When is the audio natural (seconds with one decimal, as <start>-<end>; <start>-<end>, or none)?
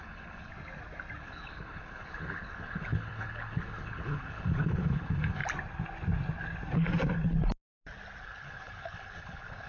0.5-1.2; 5.4-8.2